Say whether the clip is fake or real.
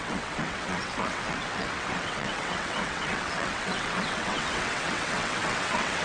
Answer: fake